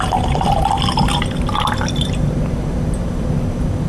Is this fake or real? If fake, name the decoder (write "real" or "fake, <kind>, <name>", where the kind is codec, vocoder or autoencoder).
real